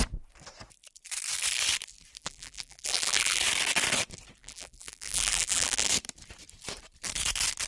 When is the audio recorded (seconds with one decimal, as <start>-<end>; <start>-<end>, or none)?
0.0-2.2; 3.4-4.4; 5.9-7.7

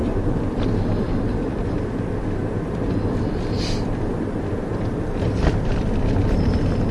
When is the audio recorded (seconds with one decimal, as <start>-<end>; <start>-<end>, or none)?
1.7-2.4; 6.5-6.9

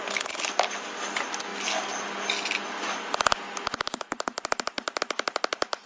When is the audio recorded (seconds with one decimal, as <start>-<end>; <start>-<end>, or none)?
0.0-5.9